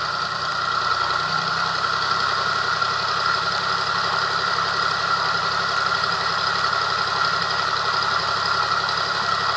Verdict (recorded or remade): remade